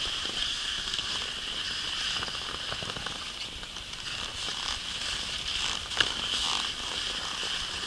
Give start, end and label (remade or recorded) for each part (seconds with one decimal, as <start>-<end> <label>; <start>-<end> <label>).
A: 0.0-0.4 recorded; 0.4-1.1 remade; 1.1-7.9 recorded